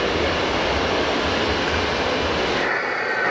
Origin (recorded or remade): recorded